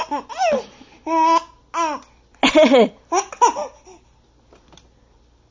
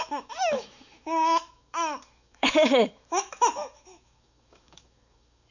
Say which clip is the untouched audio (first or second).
first